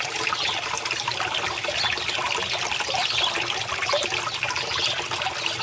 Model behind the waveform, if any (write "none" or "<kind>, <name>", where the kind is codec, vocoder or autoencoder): none